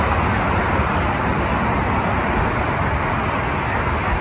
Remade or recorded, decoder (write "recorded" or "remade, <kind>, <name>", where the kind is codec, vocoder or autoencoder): recorded